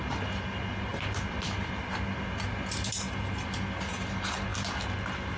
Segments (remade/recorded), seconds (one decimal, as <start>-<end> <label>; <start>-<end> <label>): 0.0-0.9 recorded; 0.9-3.9 remade; 3.9-5.4 recorded